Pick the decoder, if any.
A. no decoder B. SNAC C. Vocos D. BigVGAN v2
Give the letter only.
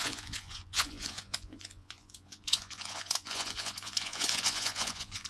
C